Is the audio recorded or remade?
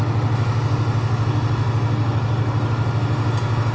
recorded